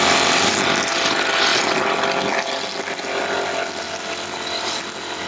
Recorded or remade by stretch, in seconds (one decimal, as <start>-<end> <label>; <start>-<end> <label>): 0.0-5.3 recorded